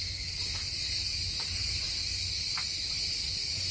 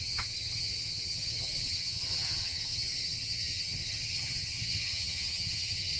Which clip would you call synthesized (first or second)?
second